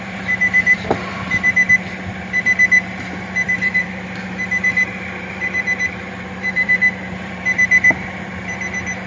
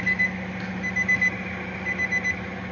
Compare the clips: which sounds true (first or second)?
second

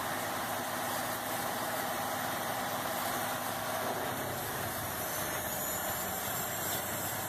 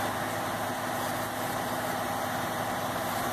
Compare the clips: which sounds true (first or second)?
second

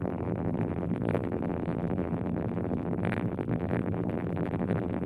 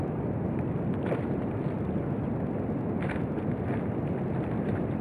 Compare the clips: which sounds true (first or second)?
second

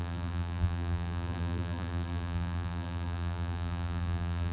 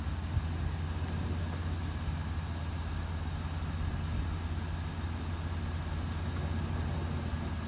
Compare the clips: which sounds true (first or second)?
second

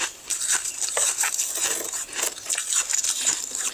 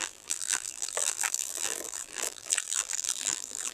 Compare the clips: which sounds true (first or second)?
first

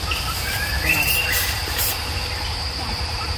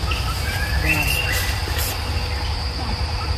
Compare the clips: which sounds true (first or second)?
second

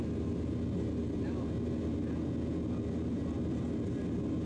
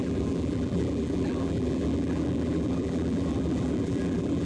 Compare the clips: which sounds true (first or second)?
first